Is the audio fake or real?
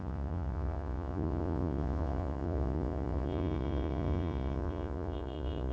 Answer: fake